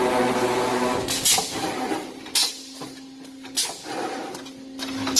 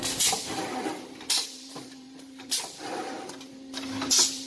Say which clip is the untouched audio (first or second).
first